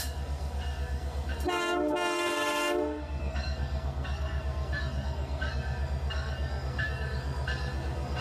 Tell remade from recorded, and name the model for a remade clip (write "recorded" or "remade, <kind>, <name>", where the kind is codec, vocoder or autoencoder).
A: remade, codec, SNAC